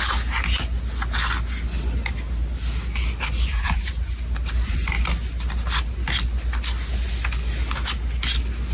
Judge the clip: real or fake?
real